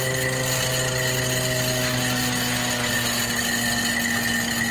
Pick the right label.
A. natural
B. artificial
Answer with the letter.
A